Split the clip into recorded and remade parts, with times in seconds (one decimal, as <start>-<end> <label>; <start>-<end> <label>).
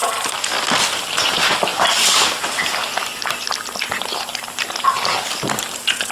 0.0-6.1 recorded